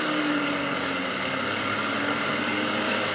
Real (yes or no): no